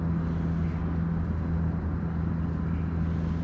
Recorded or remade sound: recorded